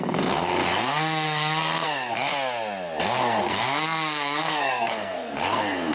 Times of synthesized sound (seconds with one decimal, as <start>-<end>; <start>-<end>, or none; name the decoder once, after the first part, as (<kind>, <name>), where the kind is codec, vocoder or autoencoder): 0.0-2.3 (codec, SNAC); 3.0-5.9